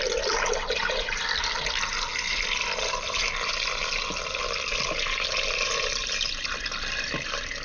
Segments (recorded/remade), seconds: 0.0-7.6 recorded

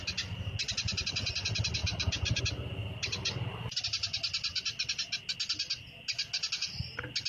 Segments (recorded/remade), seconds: 0.0-1.8 recorded; 1.8-2.4 remade; 2.4-2.8 recorded; 2.8-3.8 remade; 3.8-7.3 recorded

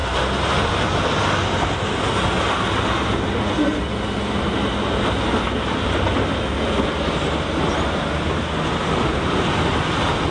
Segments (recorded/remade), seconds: 0.0-10.3 recorded